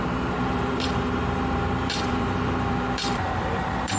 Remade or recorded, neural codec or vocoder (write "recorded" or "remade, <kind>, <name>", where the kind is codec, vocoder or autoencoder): remade, vocoder, BigVGAN v2